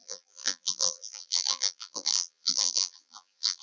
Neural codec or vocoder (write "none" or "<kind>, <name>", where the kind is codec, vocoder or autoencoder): vocoder, BigVGAN v2